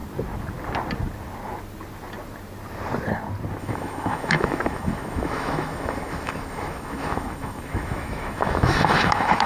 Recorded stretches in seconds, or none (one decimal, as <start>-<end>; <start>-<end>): 0.0-3.6